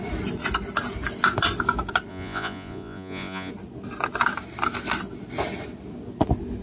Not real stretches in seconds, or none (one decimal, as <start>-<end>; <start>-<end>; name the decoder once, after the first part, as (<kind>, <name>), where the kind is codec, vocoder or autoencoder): 2.1-3.5 (vocoder, Vocos)